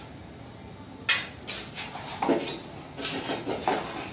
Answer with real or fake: real